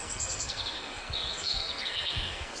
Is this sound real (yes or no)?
no